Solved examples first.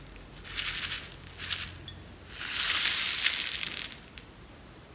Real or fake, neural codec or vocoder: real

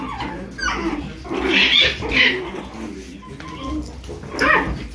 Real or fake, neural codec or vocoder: real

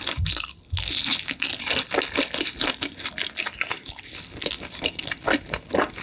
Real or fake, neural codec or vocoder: real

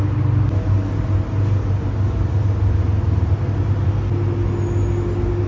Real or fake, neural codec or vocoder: real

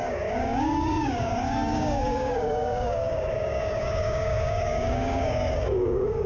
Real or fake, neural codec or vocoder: fake, codec, DAC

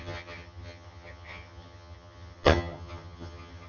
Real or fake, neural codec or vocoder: fake, vocoder, HiFi-GAN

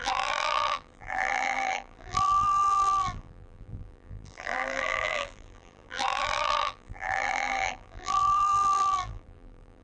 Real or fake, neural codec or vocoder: fake, vocoder, BigVGAN v2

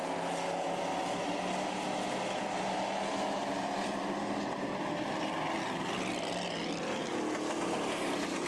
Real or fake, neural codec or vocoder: real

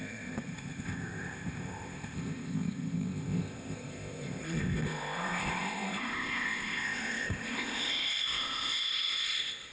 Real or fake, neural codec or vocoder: fake, codec, ZipCodec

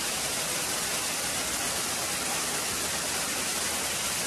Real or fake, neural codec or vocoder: real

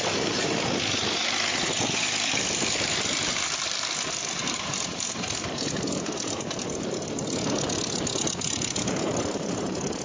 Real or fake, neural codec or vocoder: fake, vocoder, BigVGAN v2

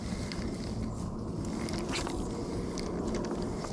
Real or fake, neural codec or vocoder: real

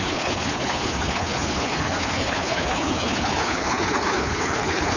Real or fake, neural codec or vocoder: fake, codec, HILCodec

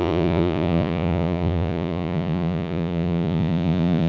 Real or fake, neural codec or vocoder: fake, vocoder, Vocos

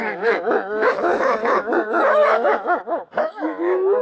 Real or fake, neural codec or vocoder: fake, autoencoder, DAC-VAE